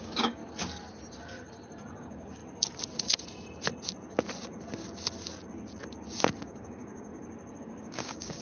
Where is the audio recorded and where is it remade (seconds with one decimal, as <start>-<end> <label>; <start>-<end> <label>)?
0.0-0.4 remade; 0.4-2.0 recorded; 2.0-2.4 remade; 2.4-6.4 recorded; 6.4-7.1 remade; 7.1-7.6 recorded; 7.6-8.4 remade